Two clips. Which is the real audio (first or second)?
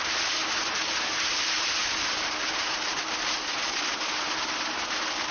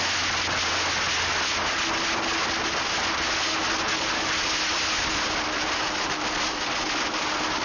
second